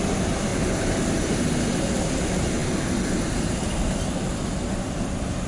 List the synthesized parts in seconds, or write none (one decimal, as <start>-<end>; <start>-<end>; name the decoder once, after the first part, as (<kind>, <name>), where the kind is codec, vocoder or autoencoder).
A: none